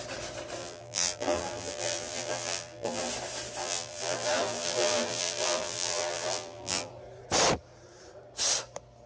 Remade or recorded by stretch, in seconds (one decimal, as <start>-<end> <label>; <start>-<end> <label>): 0.0-0.6 recorded; 0.6-3.1 remade; 3.1-3.6 recorded; 3.6-6.9 remade; 6.9-9.1 recorded